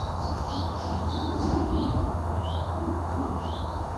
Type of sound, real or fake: fake